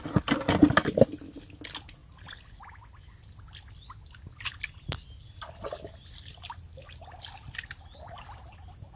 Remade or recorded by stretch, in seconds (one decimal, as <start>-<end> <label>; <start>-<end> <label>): 0.0-2.0 recorded; 2.0-2.6 remade; 2.6-9.0 recorded